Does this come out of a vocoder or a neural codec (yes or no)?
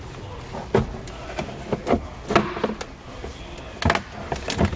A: no